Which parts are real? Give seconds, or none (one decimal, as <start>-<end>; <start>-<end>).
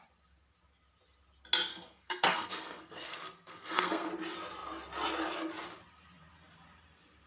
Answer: 0.0-1.7; 4.1-7.3